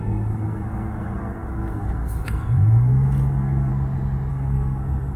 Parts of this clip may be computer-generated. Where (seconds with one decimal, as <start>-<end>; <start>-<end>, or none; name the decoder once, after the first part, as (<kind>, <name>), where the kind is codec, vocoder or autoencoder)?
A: 0.0-3.7 (codec, SNAC); 4.3-5.2